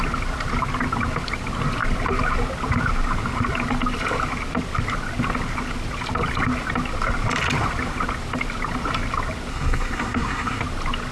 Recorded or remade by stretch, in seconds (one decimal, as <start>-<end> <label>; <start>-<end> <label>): 0.0-9.5 recorded; 9.5-10.6 remade; 10.6-11.1 recorded